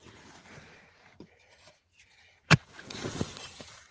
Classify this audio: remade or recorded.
remade